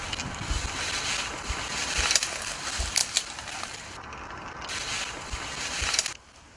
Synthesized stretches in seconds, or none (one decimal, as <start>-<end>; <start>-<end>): none